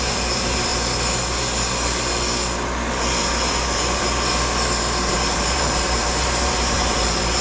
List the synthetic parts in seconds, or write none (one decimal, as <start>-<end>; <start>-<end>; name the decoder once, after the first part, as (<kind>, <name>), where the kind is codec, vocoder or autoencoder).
0.0-0.7 (vocoder, BigVGAN v2); 5.1-7.4